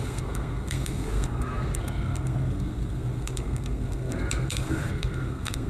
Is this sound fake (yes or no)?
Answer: yes